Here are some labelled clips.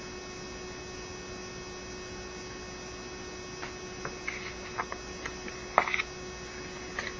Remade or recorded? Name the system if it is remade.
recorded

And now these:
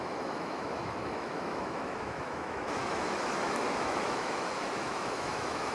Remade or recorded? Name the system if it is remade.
remade, autoencoder, DAC-VAE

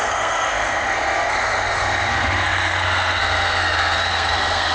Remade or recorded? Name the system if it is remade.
remade, codec, SNAC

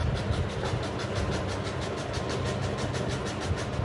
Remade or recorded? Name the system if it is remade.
recorded